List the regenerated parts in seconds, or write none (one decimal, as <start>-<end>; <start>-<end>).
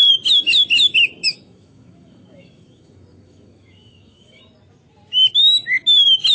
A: 1.2-4.4